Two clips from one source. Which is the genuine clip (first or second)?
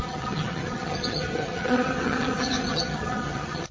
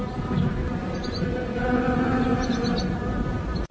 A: second